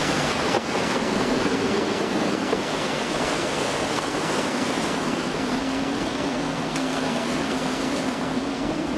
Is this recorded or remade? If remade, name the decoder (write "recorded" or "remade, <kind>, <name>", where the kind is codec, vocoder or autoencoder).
remade, codec, SNAC